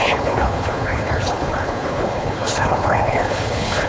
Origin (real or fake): fake